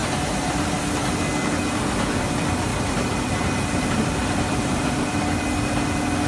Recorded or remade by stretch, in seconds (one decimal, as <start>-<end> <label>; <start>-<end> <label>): 0.0-0.5 remade; 0.5-2.7 recorded; 2.7-5.0 remade; 5.0-6.3 recorded